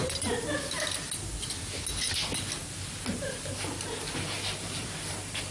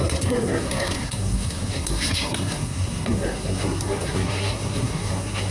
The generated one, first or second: second